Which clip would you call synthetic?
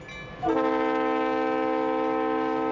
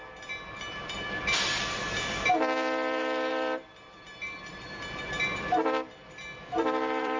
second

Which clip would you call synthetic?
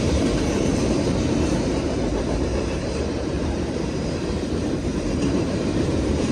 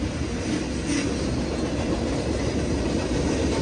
first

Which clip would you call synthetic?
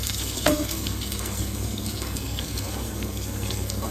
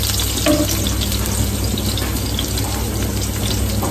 first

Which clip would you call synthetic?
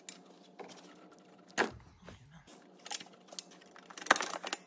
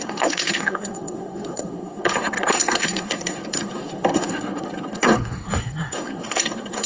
second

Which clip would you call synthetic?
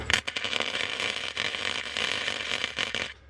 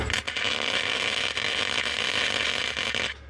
first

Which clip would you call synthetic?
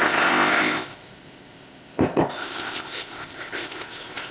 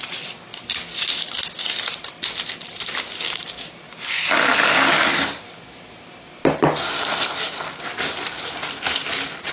first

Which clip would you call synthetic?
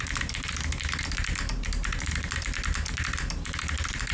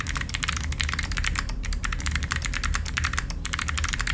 second